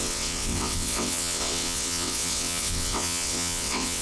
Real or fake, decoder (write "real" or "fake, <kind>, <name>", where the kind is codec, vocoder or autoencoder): fake, vocoder, WaveNeXt